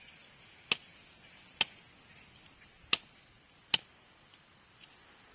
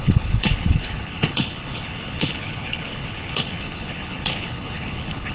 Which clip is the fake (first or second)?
second